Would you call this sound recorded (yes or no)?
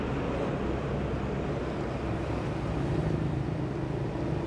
yes